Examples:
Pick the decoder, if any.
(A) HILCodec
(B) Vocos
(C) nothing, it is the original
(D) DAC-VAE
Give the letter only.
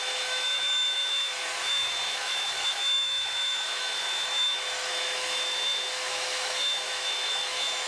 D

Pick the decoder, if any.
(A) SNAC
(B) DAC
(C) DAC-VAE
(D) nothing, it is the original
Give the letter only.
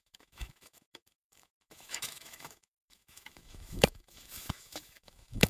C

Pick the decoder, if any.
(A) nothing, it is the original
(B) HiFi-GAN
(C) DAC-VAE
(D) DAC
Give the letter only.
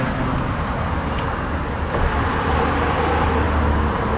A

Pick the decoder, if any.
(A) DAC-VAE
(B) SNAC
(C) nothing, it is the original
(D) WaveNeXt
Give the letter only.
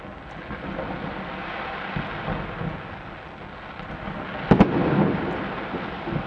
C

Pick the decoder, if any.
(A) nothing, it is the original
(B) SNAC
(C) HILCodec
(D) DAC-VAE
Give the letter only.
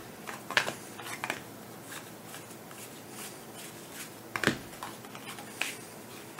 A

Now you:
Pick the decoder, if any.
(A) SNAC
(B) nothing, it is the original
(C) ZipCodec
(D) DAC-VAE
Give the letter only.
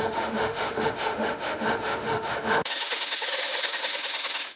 D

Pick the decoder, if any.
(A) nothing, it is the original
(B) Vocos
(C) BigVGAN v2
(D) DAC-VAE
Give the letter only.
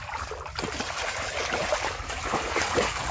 A